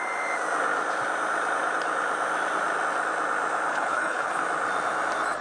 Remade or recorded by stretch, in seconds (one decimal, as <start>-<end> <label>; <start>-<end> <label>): 0.0-3.7 recorded; 3.7-4.4 remade; 4.4-5.4 recorded